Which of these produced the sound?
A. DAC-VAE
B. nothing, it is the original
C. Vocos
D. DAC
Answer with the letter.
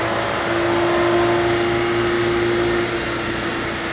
B